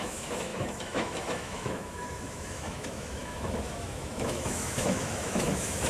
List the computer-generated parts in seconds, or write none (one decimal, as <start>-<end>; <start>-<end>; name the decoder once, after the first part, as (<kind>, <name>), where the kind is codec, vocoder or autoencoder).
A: 0.0-5.9 (autoencoder, DAC-VAE)

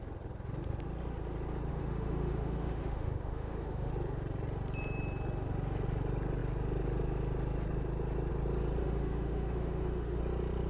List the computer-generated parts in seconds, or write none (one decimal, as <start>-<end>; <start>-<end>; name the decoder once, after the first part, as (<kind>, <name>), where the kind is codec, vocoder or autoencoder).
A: 1.7-3.9 (autoencoder, DAC-VAE); 8.8-10.2

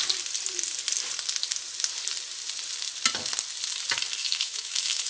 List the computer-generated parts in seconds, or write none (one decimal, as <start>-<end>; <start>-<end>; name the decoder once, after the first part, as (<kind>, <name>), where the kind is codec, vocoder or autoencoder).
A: 4.2-5.1 (autoencoder, DAC-VAE)

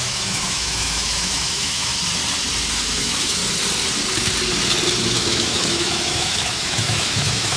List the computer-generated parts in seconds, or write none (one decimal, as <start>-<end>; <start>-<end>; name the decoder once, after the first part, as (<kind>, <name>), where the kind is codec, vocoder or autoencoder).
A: 0.0-1.9 (autoencoder, DAC-VAE); 3.0-3.4; 5.0-7.6

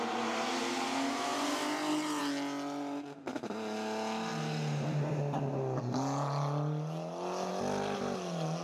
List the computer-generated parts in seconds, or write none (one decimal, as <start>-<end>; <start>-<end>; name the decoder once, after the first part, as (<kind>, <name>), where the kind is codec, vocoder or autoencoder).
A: none